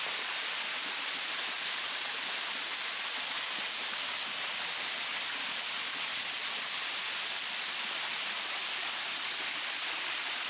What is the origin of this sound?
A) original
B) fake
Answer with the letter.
A